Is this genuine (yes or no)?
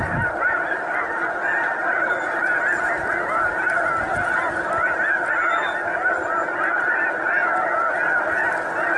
yes